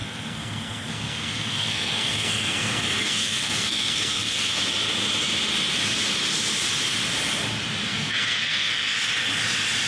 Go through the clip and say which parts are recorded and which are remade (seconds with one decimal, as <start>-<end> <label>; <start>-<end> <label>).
0.0-4.6 remade; 4.6-7.9 recorded; 7.9-9.0 remade; 9.0-9.9 recorded